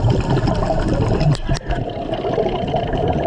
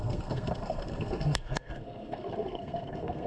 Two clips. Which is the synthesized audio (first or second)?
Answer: second